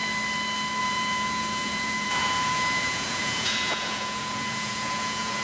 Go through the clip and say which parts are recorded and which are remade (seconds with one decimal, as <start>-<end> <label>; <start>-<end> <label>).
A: 0.0-0.8 recorded; 0.8-5.4 remade